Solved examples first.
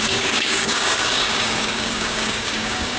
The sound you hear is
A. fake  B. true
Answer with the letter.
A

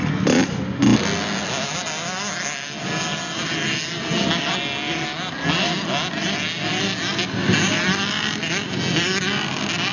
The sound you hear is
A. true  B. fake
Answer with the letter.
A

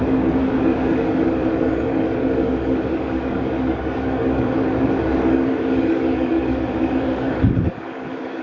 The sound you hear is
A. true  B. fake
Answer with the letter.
B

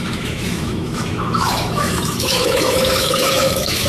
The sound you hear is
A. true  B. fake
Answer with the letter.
B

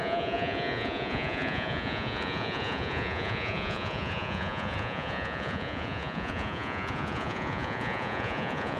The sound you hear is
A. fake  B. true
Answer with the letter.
A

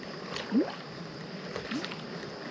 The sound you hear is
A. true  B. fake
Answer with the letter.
A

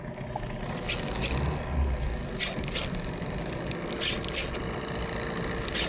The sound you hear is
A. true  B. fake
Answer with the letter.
A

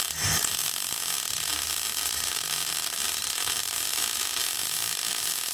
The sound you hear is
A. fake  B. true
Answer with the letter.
B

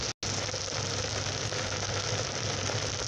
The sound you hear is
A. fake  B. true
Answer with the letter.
B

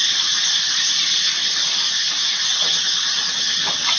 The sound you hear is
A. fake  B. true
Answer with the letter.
B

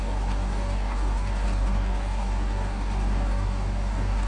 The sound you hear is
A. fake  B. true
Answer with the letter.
A